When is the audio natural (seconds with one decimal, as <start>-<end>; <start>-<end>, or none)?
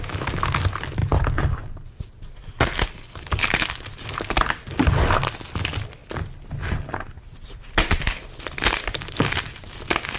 0.0-10.2